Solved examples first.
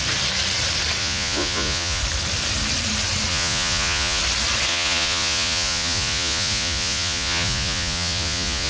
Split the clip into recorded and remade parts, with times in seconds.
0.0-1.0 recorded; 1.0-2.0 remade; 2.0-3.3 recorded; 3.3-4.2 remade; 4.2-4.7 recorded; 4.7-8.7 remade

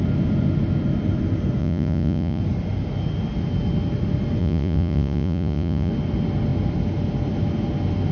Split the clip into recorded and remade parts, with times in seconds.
0.0-1.6 recorded; 1.6-2.4 remade; 2.4-4.4 recorded; 4.4-5.9 remade; 5.9-8.1 recorded

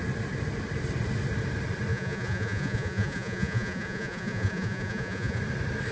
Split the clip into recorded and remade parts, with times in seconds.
0.0-1.9 recorded; 1.9-5.4 remade; 5.4-5.9 recorded

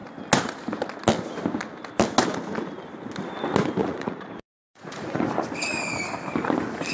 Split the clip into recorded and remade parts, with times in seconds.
0.0-3.8 recorded; 3.8-5.2 remade; 5.2-6.9 recorded

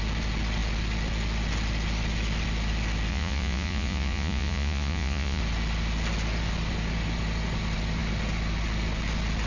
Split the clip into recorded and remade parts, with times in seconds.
0.0-3.1 recorded; 3.1-5.4 remade; 5.4-9.5 recorded

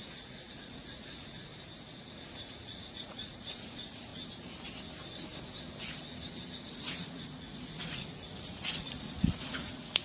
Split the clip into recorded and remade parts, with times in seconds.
0.0-1.5 remade; 1.5-2.4 recorded; 2.4-4.1 remade; 4.1-6.7 recorded; 6.7-10.0 remade